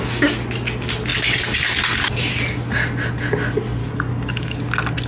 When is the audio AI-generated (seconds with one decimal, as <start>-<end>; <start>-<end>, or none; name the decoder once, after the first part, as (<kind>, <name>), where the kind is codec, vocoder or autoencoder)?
3.8-4.6 (codec, DAC)